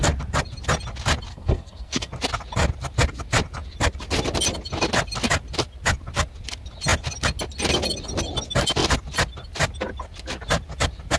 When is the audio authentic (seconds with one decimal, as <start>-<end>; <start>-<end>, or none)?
0.0-1.3; 2.1-11.2